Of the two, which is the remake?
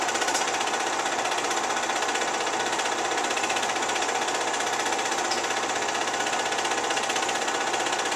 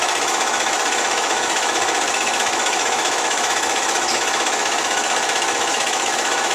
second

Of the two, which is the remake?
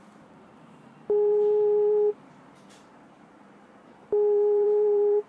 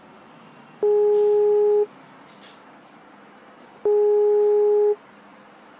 first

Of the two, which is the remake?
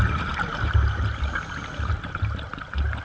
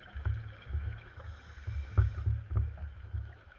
second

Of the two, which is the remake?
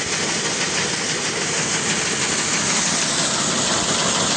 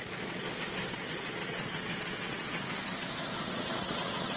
second